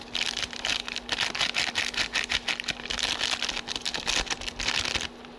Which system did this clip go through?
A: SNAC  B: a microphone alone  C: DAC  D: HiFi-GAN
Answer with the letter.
B